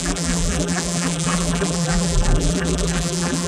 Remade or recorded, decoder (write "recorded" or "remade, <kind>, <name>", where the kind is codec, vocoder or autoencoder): remade, vocoder, BigVGAN v2